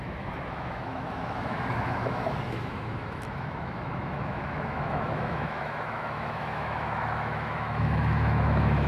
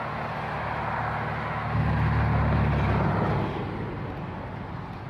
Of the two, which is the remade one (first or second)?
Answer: first